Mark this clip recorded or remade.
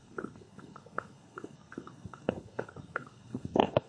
remade